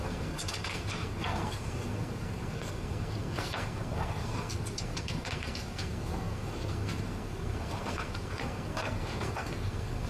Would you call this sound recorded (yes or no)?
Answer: no